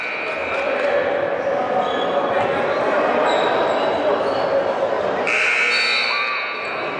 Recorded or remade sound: recorded